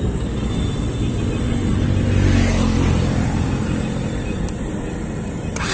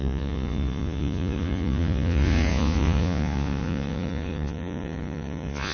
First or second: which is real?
first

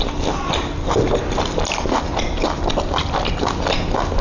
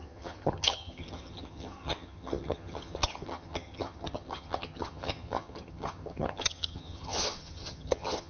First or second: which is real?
first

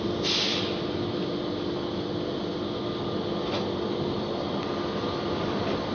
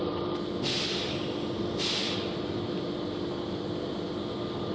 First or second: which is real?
first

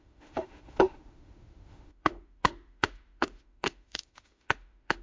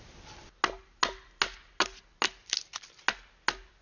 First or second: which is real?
second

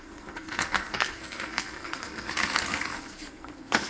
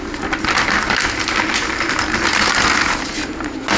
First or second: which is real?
second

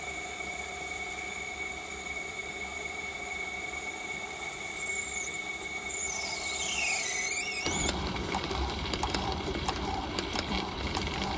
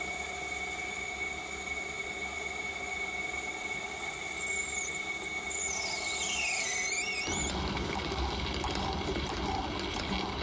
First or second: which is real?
second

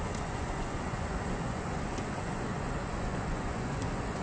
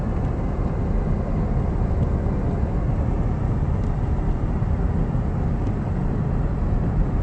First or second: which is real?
second